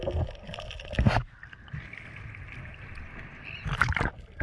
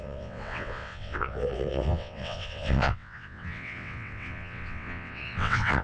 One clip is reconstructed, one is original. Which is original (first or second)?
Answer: first